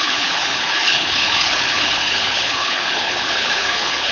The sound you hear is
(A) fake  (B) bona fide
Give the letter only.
A